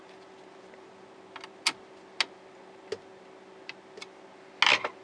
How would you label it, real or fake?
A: real